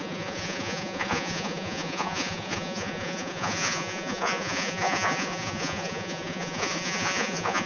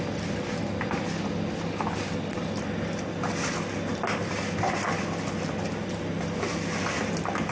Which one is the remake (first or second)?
first